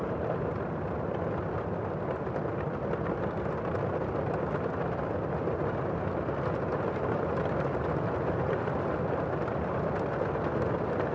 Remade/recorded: recorded